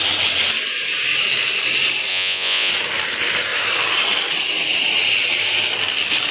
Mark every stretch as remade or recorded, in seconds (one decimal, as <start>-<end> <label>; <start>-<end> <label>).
0.0-2.1 recorded; 2.1-2.7 remade; 2.7-6.3 recorded